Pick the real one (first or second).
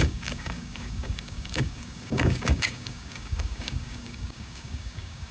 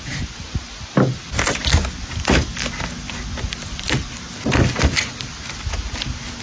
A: second